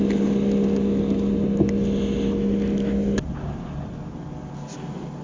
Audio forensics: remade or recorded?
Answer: recorded